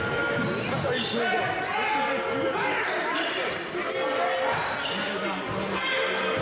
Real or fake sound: real